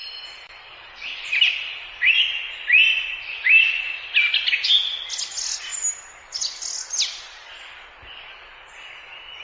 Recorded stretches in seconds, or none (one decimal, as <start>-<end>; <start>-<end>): 0.0-9.4